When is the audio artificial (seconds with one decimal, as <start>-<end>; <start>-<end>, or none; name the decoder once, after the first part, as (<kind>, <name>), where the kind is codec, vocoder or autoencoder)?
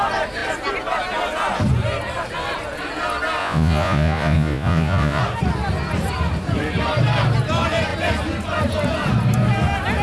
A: 3.4-5.2 (vocoder, Vocos)